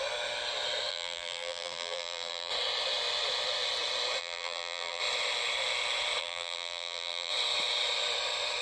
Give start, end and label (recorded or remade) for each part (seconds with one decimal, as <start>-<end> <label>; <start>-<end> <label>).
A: 0.0-0.9 recorded; 0.9-2.5 remade; 2.5-4.2 recorded; 4.2-5.0 remade; 5.0-6.2 recorded; 6.2-7.3 remade; 7.3-8.6 recorded